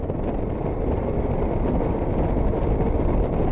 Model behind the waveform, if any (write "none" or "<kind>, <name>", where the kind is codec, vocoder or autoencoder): none